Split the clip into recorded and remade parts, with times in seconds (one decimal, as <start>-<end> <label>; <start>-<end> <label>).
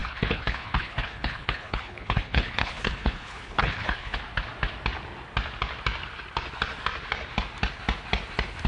0.0-4.2 remade; 4.2-8.7 recorded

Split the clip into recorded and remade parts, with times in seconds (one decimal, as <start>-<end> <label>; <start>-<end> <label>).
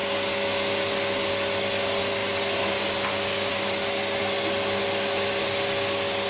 0.0-6.3 recorded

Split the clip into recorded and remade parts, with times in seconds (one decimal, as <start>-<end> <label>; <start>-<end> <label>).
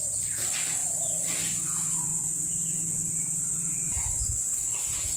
0.0-2.1 recorded; 2.1-5.2 remade